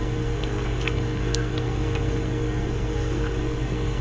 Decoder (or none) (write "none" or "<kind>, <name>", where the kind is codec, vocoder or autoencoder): codec, SNAC